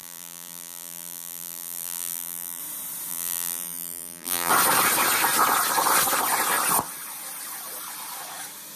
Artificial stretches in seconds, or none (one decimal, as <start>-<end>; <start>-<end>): 0.0-2.6; 3.1-4.5